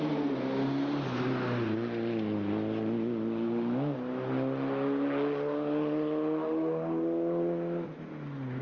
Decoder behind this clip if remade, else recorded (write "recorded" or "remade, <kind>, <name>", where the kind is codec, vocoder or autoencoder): recorded